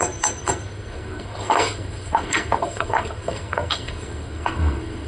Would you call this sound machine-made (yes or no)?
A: yes